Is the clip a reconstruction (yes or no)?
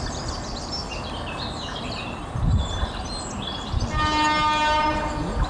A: no